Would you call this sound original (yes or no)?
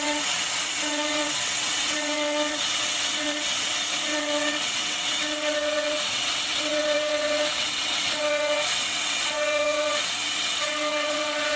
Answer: no